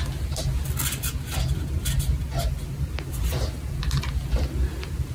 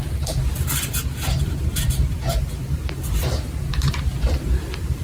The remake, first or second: second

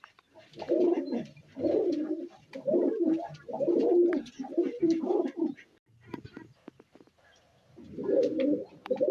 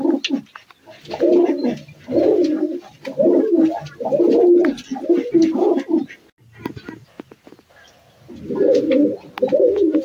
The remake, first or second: first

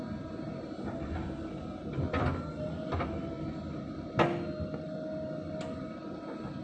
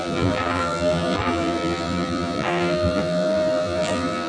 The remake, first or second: second